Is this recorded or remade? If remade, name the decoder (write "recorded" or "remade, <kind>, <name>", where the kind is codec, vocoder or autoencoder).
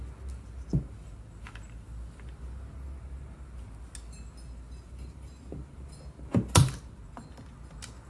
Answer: recorded